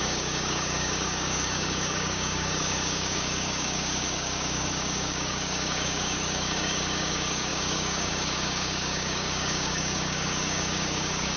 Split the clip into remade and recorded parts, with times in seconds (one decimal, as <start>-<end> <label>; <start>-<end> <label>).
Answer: 0.0-11.4 remade